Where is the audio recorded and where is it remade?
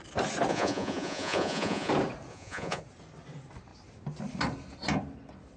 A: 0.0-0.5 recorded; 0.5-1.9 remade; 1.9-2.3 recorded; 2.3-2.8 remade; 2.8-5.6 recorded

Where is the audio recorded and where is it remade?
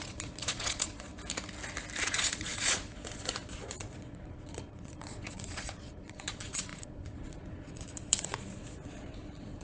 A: 0.0-1.1 remade; 1.1-2.0 recorded; 2.0-9.6 remade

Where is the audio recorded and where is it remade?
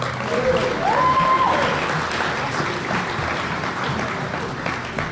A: 0.0-5.1 recorded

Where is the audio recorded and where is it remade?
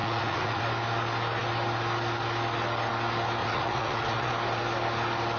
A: 0.0-0.6 remade; 0.6-3.4 recorded; 3.4-4.3 remade; 4.3-5.4 recorded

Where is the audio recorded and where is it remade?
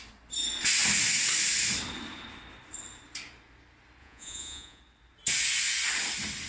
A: 0.0-4.0 recorded; 4.0-4.8 remade; 4.8-6.5 recorded